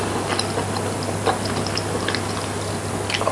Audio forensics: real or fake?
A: real